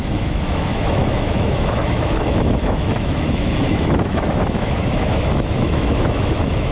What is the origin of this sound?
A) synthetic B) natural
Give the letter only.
A